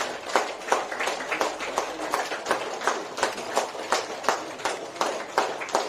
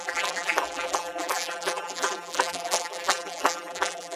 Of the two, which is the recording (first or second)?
first